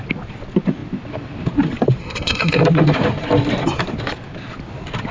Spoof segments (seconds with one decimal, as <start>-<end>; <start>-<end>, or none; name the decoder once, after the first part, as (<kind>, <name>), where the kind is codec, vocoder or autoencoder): 2.0-2.6 (codec, SNAC)